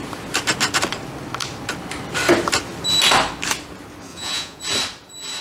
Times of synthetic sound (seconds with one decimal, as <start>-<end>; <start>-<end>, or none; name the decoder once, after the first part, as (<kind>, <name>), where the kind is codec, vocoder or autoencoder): 4.1-4.6 (vocoder, Vocos)